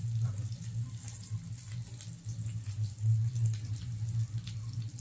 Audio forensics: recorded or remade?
recorded